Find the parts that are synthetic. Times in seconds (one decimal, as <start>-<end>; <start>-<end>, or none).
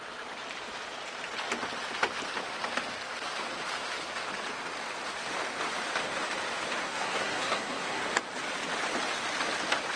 6.8-8.0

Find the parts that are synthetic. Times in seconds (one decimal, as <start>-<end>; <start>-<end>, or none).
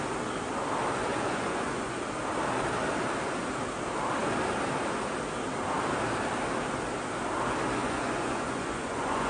1.1-2.0; 7.8-9.3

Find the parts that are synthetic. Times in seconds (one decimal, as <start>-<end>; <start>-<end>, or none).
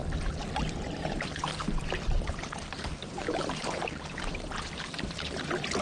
3.0-4.7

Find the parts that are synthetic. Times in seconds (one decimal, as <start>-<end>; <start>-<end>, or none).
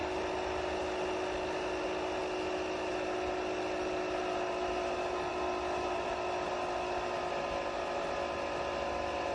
none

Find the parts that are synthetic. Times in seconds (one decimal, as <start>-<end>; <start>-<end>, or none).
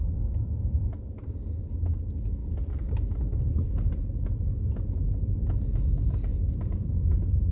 2.4-2.9; 6.3-7.5